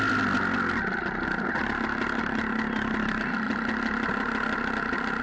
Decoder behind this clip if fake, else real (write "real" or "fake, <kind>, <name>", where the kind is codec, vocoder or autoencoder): real